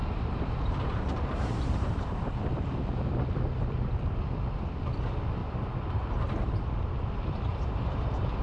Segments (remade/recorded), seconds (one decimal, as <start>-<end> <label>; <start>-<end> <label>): 0.0-2.4 remade; 2.4-5.4 recorded; 5.4-6.7 remade; 6.7-7.5 recorded; 7.5-8.4 remade